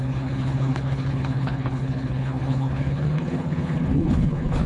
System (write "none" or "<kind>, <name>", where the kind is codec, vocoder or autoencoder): codec, HILCodec